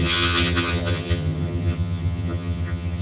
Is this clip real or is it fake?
fake